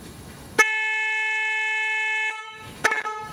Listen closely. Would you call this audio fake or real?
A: fake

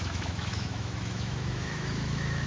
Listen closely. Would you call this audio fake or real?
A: fake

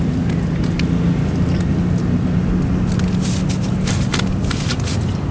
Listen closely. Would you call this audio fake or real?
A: real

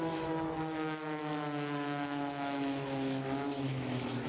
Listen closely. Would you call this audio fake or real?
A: fake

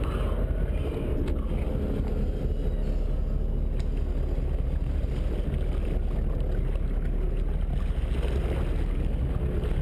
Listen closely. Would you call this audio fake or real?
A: real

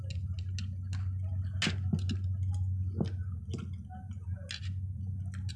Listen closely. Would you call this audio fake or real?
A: real